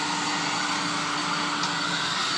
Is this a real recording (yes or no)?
yes